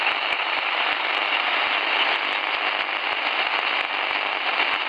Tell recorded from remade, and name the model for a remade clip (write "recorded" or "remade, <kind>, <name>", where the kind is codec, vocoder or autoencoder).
recorded